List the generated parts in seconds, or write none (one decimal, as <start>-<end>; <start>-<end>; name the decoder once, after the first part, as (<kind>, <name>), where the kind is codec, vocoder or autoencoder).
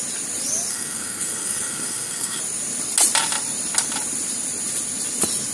0.7-2.4 (codec, SNAC)